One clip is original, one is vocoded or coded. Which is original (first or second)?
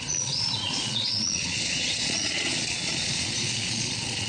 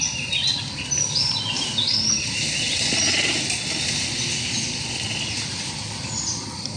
second